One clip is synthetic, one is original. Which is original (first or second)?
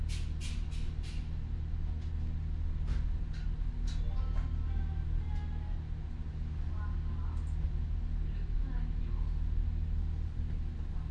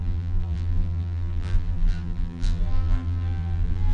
first